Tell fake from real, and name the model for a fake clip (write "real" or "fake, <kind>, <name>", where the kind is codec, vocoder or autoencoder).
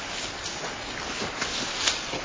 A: real